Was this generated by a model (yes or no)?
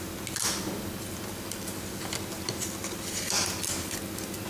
no